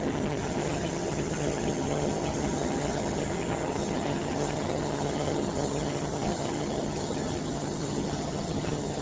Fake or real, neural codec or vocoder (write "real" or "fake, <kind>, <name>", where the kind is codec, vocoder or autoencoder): fake, vocoder, HiFi-GAN